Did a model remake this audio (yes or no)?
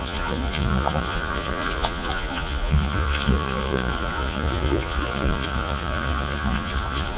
yes